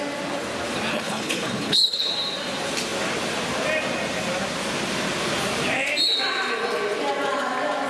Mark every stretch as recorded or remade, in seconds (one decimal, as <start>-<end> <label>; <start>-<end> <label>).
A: 0.0-0.9 recorded; 0.9-2.1 remade; 2.1-7.9 recorded